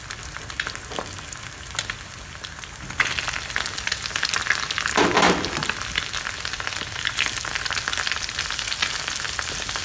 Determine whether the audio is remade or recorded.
recorded